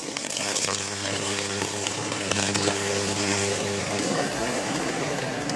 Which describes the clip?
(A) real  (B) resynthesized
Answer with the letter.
B